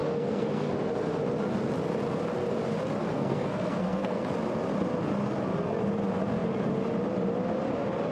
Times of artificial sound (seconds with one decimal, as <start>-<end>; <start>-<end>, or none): 0.0-0.7; 3.1-4.2